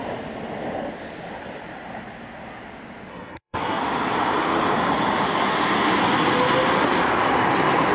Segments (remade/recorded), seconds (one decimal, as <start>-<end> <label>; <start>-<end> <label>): 0.0-3.1 recorded; 3.1-3.8 remade; 3.8-7.9 recorded